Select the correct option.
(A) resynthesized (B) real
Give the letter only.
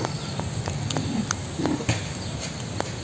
B